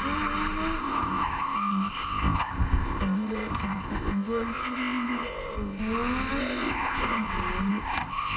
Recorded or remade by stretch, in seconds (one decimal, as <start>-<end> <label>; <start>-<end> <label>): 0.0-0.8 recorded; 0.8-5.8 remade; 5.8-6.4 recorded; 6.4-7.3 remade; 7.3-7.7 recorded; 7.7-8.4 remade